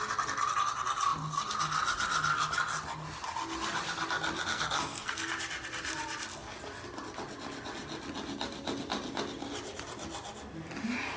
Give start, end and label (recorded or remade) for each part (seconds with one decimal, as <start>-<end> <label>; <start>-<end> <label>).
0.0-4.5 recorded; 4.5-5.3 remade; 5.3-11.2 recorded